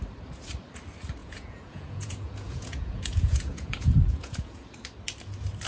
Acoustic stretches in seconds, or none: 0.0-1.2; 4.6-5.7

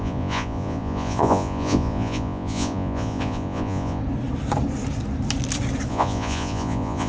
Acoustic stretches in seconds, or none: 4.0-5.9